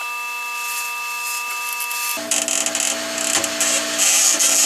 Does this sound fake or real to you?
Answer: real